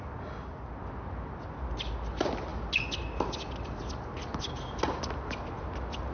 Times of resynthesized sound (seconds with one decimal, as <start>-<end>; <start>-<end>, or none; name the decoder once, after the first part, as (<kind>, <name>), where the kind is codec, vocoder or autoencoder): none